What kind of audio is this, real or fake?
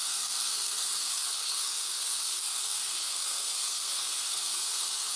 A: fake